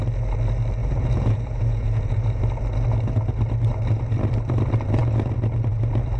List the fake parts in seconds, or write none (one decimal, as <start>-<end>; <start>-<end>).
0.8-2.4